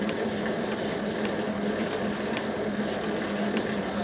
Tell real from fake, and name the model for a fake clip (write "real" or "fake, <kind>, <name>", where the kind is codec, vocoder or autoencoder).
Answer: real